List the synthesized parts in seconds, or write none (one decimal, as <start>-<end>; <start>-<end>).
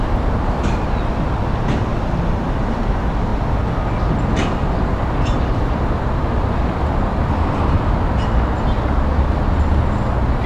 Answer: 1.9-2.6